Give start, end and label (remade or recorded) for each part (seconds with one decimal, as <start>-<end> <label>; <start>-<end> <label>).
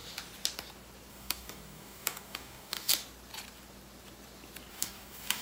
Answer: 0.0-1.1 recorded; 1.1-2.9 remade; 2.9-4.7 recorded; 4.7-5.4 remade